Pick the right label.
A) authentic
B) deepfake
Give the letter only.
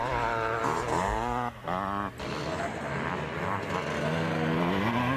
A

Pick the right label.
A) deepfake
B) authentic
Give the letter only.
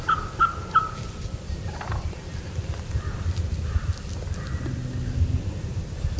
B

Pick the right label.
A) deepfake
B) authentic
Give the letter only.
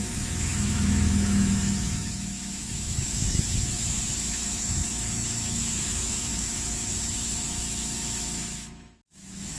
A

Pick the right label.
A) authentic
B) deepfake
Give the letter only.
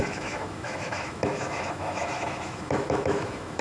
B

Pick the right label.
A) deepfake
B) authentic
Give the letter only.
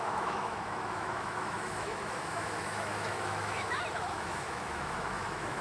A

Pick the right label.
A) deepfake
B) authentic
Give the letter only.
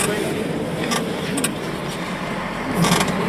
B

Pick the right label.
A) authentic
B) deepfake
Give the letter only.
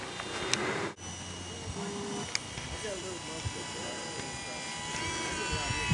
A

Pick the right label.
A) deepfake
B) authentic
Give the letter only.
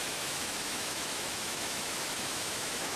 A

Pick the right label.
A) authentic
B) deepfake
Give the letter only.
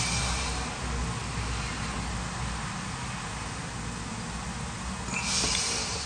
A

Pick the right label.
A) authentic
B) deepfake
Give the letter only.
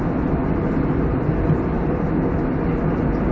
A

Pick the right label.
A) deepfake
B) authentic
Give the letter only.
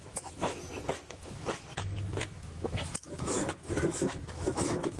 A